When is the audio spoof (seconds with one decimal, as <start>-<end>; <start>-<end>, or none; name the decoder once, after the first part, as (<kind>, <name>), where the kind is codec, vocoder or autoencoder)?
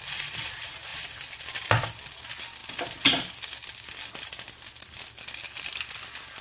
none